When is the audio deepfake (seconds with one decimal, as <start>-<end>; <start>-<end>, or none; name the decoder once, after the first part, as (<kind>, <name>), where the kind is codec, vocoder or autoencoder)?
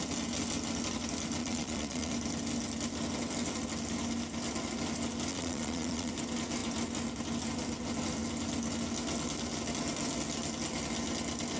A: 1.4-2.1 (vocoder, Vocos); 5.3-6.1